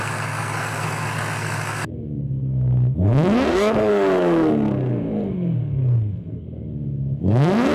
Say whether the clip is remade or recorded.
remade